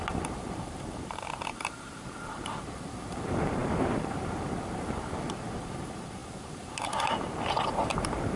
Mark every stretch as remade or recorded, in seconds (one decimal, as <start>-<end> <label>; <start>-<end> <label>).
0.0-8.4 remade